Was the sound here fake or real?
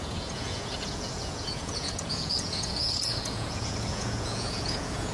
fake